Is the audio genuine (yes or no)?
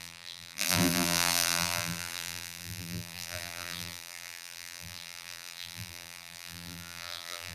no